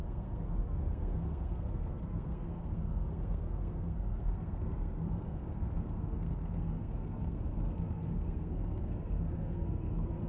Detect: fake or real fake